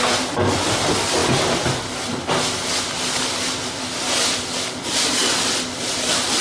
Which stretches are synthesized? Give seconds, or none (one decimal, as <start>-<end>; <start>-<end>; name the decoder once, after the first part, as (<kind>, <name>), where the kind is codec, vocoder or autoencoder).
none